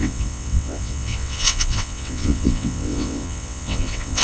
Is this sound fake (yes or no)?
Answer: yes